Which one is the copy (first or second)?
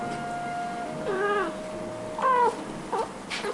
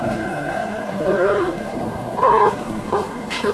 second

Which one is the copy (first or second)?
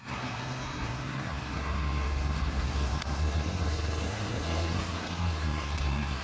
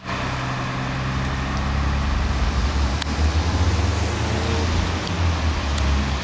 first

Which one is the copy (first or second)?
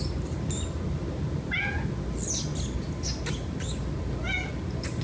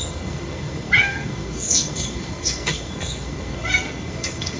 second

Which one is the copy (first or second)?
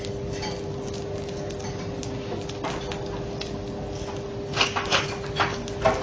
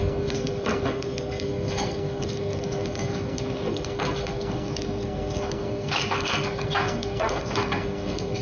second